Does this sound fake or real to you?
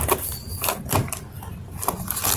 real